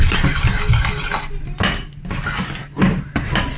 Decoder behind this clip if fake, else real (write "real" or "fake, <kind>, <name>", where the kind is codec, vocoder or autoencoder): real